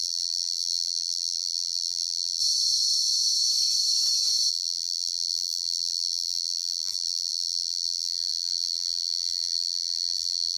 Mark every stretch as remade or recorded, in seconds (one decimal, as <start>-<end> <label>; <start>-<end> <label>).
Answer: 0.0-2.4 remade; 2.4-4.5 recorded; 4.5-10.6 remade